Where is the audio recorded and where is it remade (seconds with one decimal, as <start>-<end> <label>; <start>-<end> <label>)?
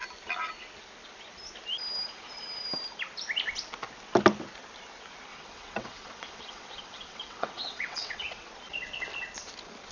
0.0-5.3 recorded; 5.3-8.5 remade; 8.5-9.9 recorded